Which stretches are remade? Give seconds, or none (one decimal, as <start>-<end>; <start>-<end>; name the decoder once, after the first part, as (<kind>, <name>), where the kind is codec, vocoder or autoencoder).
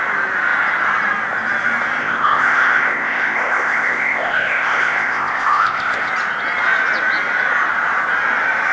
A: 2.0-6.1 (codec, ZipCodec)